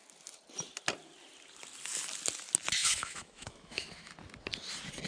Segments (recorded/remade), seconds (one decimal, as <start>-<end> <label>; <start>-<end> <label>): 0.0-2.8 recorded; 2.8-3.9 remade; 3.9-5.1 recorded